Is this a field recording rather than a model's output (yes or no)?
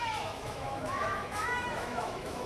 no